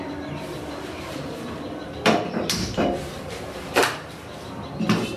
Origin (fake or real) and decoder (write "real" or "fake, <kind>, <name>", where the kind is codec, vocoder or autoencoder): fake, vocoder, BigVGAN v2